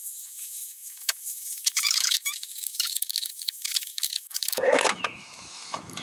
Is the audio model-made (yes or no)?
yes